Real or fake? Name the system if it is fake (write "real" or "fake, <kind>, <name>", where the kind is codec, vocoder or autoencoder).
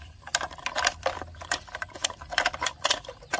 fake, vocoder, BigVGAN v2